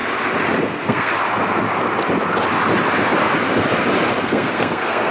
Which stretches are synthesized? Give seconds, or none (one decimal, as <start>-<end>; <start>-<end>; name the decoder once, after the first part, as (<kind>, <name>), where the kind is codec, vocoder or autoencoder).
0.6-1.1 (codec, SNAC); 4.2-5.1